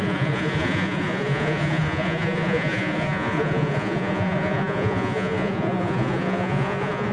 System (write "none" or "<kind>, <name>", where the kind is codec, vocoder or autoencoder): vocoder, Vocos